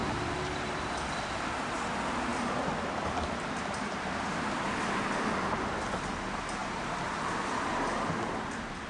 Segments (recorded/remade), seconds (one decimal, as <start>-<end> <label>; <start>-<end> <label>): 0.0-0.9 remade; 0.9-6.6 recorded; 6.6-7.5 remade; 7.5-8.9 recorded